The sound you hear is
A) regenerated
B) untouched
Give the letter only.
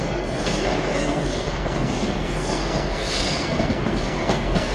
A